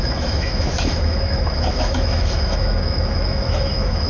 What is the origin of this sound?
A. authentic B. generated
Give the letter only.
B